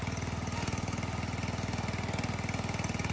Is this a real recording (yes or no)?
yes